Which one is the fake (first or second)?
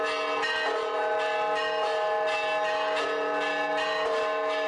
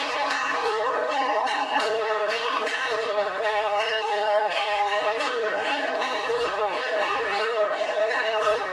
second